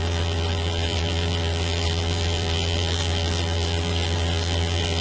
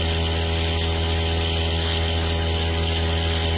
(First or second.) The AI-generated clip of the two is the first